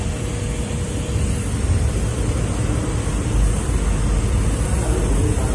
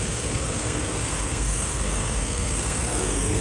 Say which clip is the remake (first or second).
second